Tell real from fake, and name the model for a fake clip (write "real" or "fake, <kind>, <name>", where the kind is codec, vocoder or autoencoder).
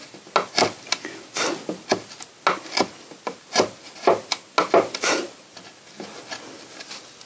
real